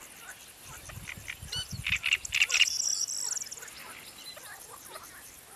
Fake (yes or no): no